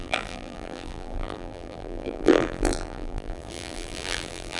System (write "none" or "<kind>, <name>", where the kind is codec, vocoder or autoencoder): vocoder, BigVGAN v2